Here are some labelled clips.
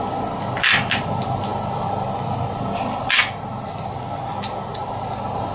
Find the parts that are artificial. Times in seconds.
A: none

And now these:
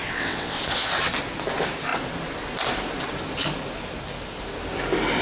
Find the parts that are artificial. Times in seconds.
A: 0.0-0.6 (vocoder, WaveNeXt)